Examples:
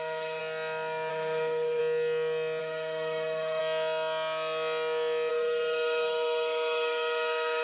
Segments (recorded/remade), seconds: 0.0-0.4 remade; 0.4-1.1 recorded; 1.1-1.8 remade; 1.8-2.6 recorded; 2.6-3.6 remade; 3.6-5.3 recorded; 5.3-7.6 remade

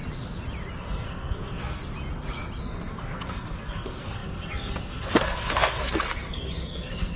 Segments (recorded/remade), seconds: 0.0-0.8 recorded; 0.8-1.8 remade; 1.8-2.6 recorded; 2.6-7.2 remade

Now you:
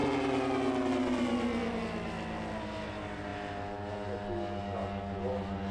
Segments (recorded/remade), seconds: 0.0-5.7 recorded

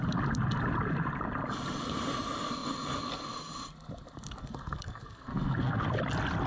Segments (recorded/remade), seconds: 0.0-4.4 recorded; 4.4-5.8 remade; 5.8-6.5 recorded

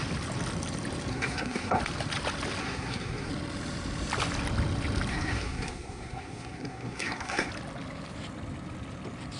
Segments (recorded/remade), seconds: 0.0-1.1 recorded; 1.1-1.8 remade; 1.8-2.6 recorded; 2.6-3.3 remade; 3.3-5.1 recorded; 5.1-7.5 remade; 7.5-9.4 recorded